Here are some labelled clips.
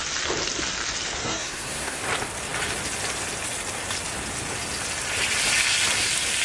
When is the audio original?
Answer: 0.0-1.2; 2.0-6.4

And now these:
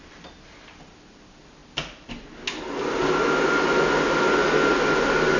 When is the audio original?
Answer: 0.0-5.4

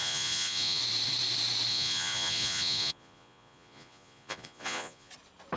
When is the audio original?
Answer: 0.8-1.7; 5.1-5.6